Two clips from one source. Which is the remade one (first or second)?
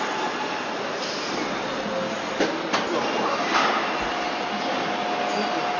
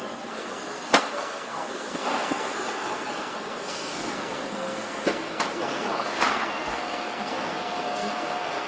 second